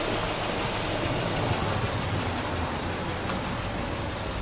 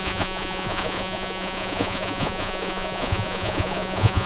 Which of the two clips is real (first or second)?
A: first